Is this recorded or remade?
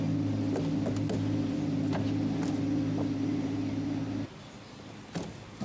recorded